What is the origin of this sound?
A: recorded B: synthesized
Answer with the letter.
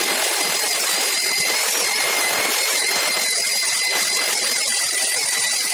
A